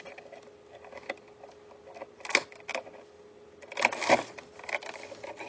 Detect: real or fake real